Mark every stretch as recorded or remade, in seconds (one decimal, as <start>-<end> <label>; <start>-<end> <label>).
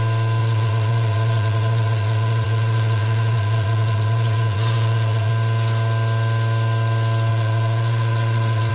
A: 0.0-0.4 recorded; 0.4-5.3 remade; 5.3-7.3 recorded; 7.3-8.7 remade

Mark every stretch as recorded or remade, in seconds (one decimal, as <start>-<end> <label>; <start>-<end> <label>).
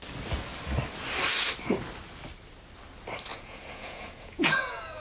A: 0.0-3.3 recorded; 3.3-5.0 remade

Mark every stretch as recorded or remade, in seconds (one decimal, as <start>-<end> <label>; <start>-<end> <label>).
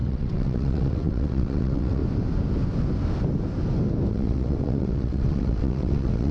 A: 0.0-2.0 remade; 2.0-4.1 recorded; 4.1-6.3 remade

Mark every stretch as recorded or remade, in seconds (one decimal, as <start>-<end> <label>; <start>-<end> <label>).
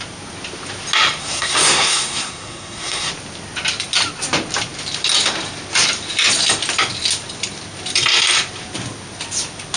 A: 0.0-1.2 recorded; 1.2-3.1 remade; 3.1-9.8 recorded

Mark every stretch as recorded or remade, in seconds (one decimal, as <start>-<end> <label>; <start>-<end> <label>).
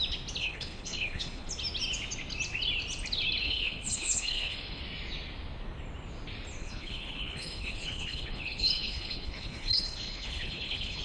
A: 0.0-0.4 recorded; 0.4-1.5 remade; 1.5-3.4 recorded; 3.4-4.8 remade; 4.8-6.6 recorded; 6.6-11.0 remade